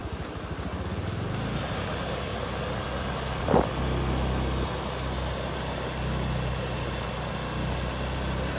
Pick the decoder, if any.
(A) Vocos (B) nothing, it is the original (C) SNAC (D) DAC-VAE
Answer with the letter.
B